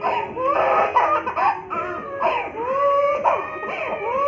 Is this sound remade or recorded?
recorded